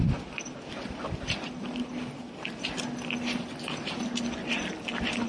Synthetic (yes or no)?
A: no